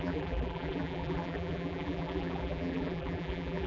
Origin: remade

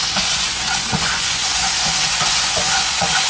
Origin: remade